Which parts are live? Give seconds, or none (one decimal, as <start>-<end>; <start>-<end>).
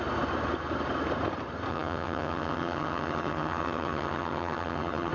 0.0-1.7